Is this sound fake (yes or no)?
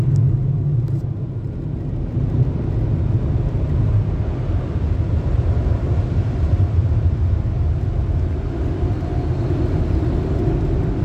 no